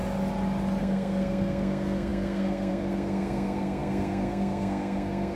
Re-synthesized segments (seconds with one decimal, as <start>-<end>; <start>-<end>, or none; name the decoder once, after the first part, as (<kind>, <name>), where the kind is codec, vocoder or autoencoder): 0.8-5.4 (codec, SNAC)